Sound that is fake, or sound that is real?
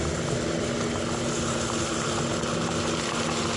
real